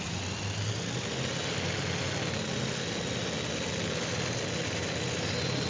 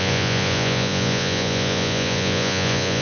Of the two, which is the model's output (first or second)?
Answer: second